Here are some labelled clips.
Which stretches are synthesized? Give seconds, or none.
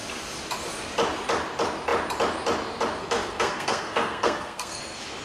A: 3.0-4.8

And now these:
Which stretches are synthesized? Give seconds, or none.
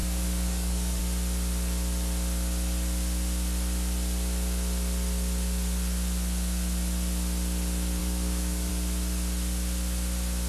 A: 0.0-1.0; 8.0-8.7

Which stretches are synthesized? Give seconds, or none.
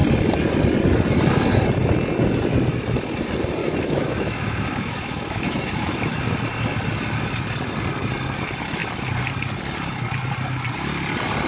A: 3.6-6.1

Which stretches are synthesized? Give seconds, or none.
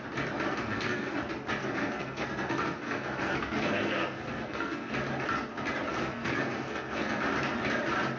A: 0.5-1.2; 1.6-4.9; 5.9-7.2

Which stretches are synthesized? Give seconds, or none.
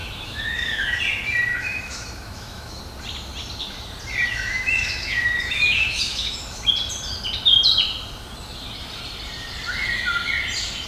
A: 0.0-1.0; 1.5-2.8; 4.3-6.7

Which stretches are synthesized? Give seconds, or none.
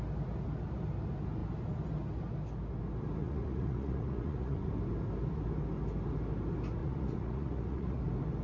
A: 3.2-4.7; 6.8-8.0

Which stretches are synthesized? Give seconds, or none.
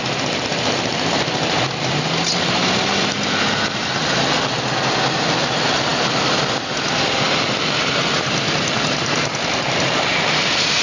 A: none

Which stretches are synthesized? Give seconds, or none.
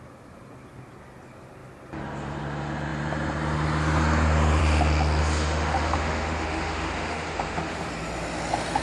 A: 5.2-7.9